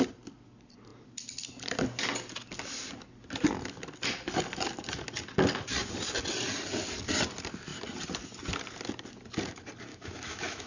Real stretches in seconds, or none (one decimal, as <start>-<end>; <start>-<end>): 0.0-9.9